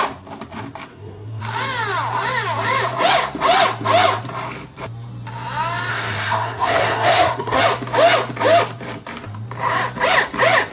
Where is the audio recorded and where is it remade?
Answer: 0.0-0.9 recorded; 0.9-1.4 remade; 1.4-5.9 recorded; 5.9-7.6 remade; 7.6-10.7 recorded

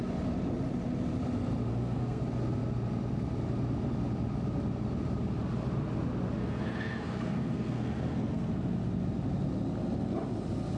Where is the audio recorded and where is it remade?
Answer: 0.0-1.7 recorded; 1.7-2.2 remade; 2.2-6.4 recorded; 6.4-8.5 remade; 8.5-10.8 recorded

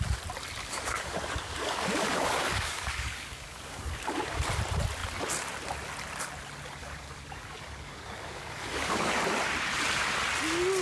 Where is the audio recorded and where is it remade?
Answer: 0.0-0.6 recorded; 0.6-4.4 remade; 4.4-6.8 recorded; 6.8-9.1 remade; 9.1-10.8 recorded

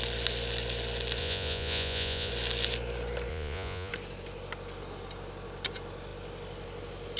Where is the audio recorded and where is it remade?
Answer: 0.0-1.2 recorded; 1.2-2.3 remade; 2.3-3.3 recorded; 3.3-3.9 remade; 3.9-7.2 recorded

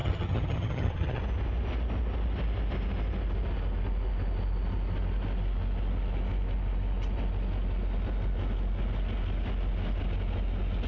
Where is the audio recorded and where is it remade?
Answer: 0.0-1.2 remade; 1.2-10.9 recorded